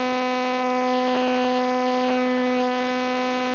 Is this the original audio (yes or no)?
yes